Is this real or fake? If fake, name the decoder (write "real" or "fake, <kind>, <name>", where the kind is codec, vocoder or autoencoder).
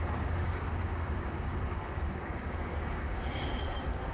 fake, codec, DAC